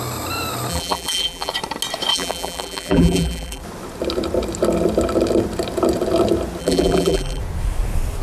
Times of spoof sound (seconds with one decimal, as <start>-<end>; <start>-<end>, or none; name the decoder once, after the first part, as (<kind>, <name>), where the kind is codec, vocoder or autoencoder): 0.7-1.5 (vocoder, BigVGAN v2); 2.1-3.6; 6.6-7.4